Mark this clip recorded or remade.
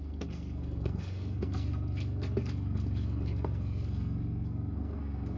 remade